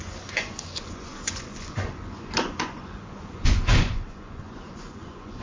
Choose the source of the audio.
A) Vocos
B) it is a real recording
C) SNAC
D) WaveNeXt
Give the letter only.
A